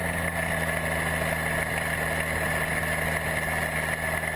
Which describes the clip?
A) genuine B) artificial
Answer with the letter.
A